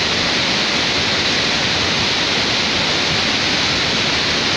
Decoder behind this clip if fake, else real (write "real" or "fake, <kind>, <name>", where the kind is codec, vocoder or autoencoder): real